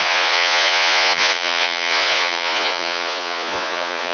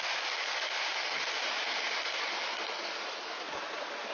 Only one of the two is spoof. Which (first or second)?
first